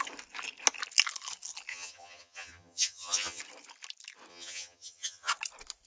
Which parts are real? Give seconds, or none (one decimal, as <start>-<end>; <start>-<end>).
0.0-1.7; 3.4-4.3; 5.3-5.9